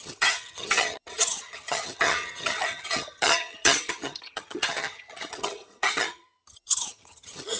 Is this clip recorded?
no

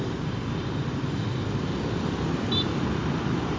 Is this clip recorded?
no